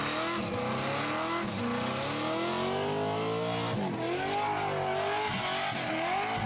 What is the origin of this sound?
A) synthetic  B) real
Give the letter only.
B